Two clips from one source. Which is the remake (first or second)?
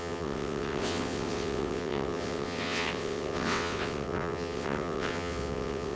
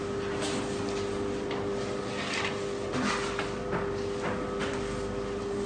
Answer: first